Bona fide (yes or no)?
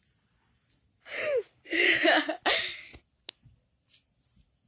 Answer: yes